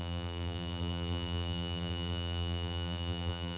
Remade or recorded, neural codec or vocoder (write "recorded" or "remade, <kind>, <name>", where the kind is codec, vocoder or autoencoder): remade, vocoder, BigVGAN v2